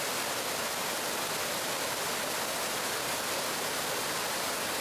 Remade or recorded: recorded